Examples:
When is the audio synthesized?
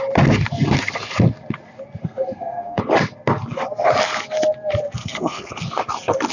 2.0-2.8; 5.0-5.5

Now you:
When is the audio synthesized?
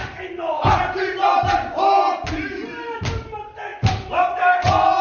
0.0-3.0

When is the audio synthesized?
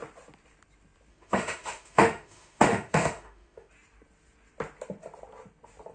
1.1-3.7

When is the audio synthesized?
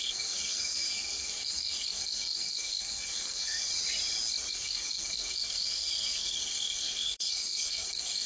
0.0-3.7; 4.5-8.3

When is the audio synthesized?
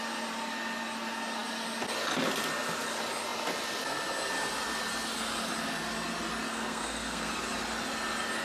6.5-7.3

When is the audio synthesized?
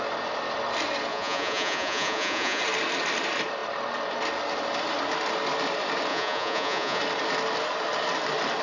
1.1-2.6; 6.1-7.0